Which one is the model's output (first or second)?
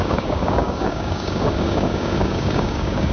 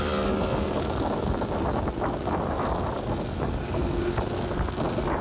first